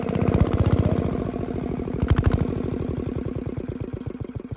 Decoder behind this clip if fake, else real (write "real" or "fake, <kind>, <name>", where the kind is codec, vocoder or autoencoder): real